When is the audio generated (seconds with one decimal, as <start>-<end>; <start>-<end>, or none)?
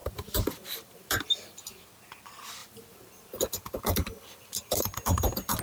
0.0-1.8; 2.6-5.6